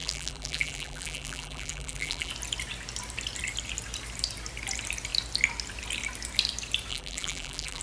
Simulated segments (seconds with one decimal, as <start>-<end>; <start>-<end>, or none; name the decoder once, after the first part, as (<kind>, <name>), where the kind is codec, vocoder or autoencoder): 0.0-2.3 (vocoder, BigVGAN v2); 6.9-7.8